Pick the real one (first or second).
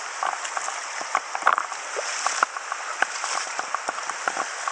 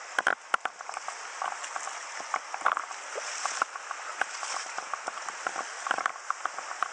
second